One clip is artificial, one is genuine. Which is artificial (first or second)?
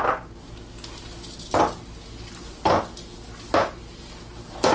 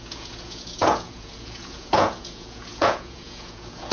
second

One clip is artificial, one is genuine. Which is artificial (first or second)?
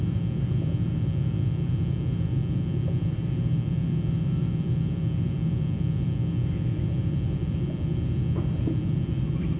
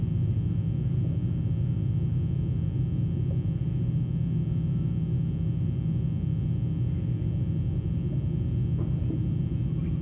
first